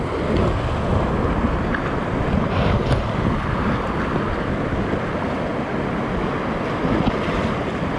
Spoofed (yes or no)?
no